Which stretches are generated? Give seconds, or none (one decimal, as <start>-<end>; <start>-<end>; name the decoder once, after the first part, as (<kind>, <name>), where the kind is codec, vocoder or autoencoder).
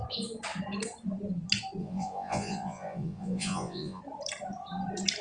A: 1.8-4.0 (vocoder, Vocos)